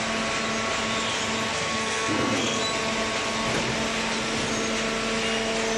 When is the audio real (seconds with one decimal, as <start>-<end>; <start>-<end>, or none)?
0.0-1.5; 2.6-5.8